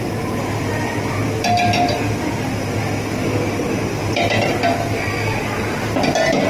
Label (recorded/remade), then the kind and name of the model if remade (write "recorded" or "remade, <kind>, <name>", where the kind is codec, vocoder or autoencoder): recorded